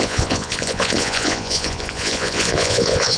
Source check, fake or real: fake